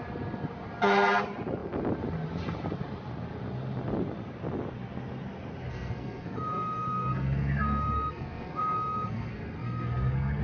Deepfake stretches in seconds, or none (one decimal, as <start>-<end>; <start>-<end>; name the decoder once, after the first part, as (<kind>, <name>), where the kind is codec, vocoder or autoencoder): 5.7-10.4 (codec, SNAC)